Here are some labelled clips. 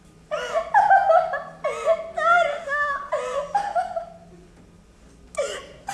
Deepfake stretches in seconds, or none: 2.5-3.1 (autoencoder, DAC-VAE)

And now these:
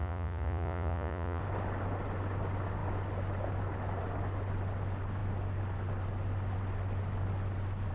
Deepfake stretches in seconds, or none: 0.0-1.4 (vocoder, Vocos)

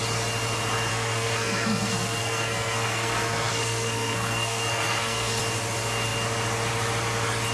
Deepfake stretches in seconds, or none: 0.9-5.4 (codec, SNAC)

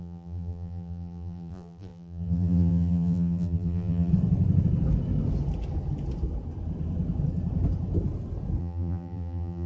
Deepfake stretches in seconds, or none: 0.0-4.1 (vocoder, BigVGAN v2); 8.6-9.7